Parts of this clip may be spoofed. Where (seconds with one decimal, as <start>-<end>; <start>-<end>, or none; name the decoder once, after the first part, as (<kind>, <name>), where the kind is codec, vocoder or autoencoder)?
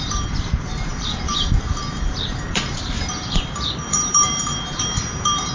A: 0.0-5.5 (vocoder, BigVGAN v2)